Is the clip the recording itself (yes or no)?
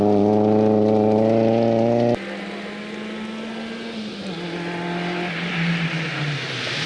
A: yes